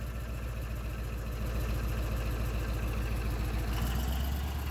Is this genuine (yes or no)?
yes